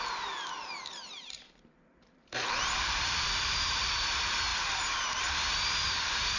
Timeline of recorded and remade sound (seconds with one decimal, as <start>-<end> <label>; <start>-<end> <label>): 0.0-0.6 recorded; 0.6-3.9 remade; 3.9-4.5 recorded; 4.5-5.3 remade; 5.3-5.8 recorded; 5.8-6.4 remade

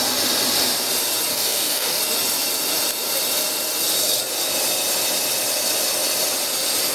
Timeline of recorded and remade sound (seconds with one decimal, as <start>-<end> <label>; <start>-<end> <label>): 0.0-1.3 recorded; 1.3-2.0 remade; 2.0-6.9 recorded

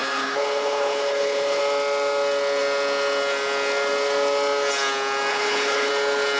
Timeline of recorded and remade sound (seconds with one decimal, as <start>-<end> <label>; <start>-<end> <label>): 0.0-1.6 remade; 1.6-5.3 recorded; 5.3-5.9 remade; 5.9-6.4 recorded

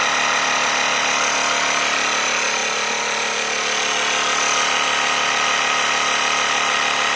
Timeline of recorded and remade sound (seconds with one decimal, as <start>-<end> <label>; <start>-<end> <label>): 0.0-7.2 recorded